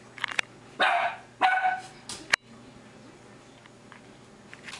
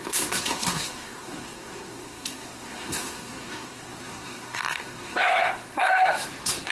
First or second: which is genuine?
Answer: first